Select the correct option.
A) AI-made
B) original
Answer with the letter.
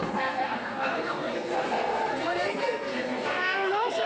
A